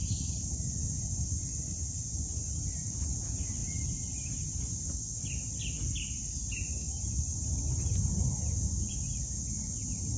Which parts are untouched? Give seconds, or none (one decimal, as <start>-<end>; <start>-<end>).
0.0-10.2